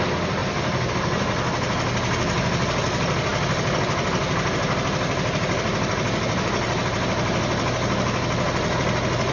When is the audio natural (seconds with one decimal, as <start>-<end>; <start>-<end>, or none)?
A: 0.0-0.4; 0.9-9.3